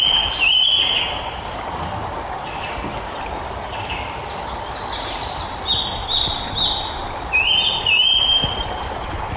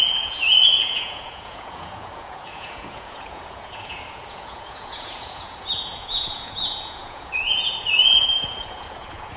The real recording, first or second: first